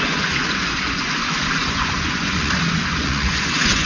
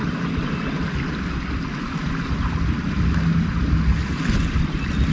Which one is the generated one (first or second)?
first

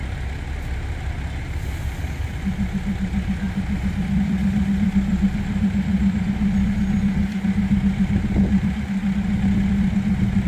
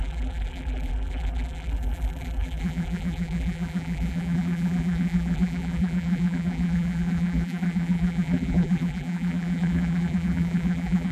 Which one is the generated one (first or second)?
second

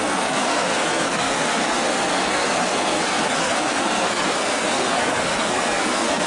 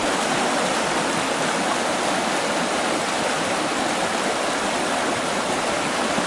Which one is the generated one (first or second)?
first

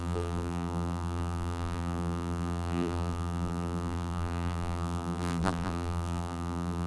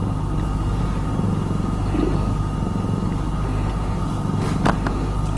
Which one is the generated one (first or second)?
first